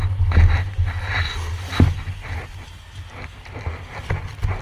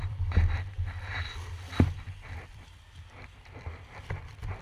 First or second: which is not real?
second